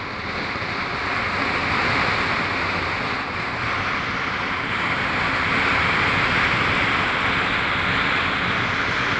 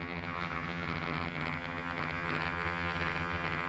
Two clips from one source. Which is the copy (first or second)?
second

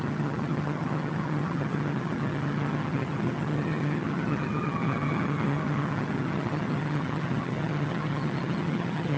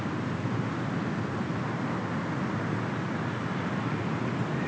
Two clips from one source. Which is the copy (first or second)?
first